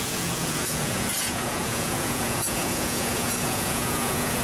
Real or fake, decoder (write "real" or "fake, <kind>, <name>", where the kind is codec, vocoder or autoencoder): fake, vocoder, Vocos